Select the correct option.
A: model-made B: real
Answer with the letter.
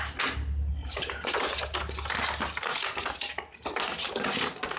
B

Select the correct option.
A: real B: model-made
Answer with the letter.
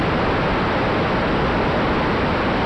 A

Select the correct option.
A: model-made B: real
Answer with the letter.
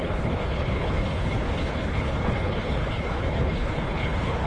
A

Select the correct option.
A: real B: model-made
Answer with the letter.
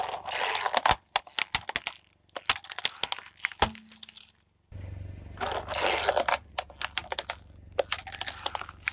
A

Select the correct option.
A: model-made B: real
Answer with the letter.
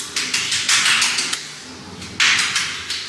B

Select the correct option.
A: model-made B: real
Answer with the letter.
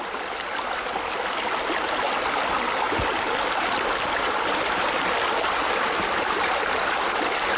B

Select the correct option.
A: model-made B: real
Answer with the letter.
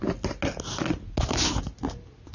B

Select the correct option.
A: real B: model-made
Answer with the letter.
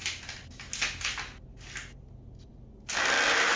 A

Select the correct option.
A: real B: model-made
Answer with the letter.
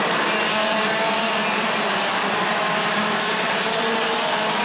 B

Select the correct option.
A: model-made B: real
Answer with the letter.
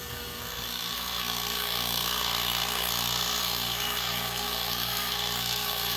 A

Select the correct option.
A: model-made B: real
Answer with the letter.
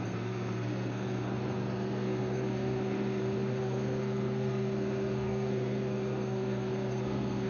A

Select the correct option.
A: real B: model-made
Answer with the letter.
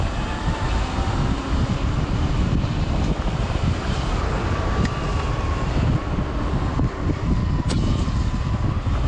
A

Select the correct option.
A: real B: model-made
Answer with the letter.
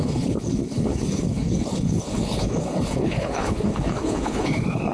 B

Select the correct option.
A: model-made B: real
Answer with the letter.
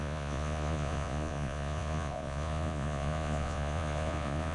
A